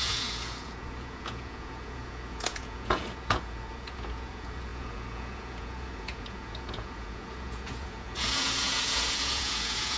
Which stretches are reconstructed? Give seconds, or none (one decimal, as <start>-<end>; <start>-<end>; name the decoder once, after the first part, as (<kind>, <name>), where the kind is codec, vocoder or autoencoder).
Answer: 0.0-10.0 (vocoder, Vocos)